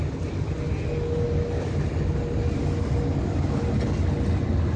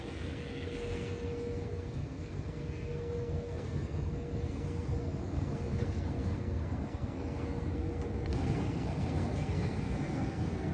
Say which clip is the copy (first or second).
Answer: second